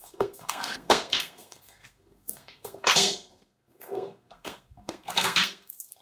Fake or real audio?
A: fake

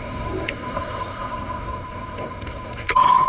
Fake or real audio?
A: fake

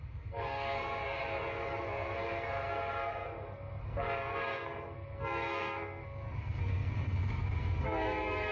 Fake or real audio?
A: fake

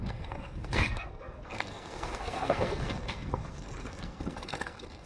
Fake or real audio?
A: fake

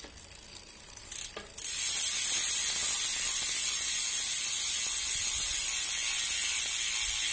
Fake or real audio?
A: real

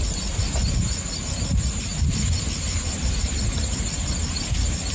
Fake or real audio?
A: real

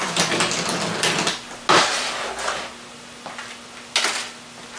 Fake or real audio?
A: real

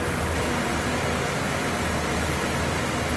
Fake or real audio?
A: real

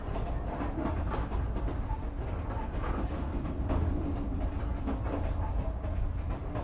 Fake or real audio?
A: real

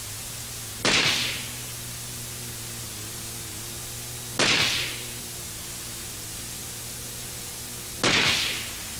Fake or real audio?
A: real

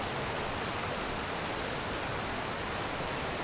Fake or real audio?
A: real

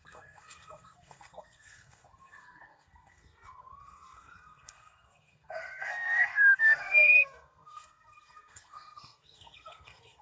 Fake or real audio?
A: fake